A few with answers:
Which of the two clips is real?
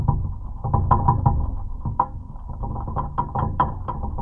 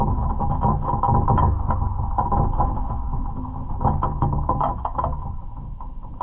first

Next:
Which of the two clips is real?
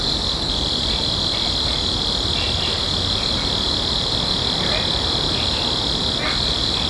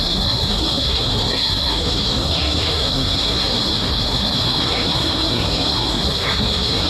first